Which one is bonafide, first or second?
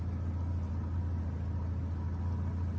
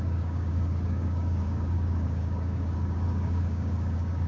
first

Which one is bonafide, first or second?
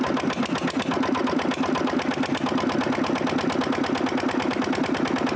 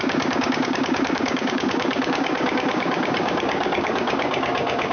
first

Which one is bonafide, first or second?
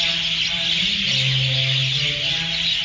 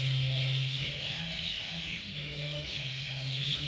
first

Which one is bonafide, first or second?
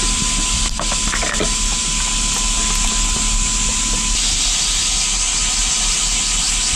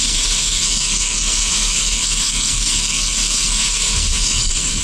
first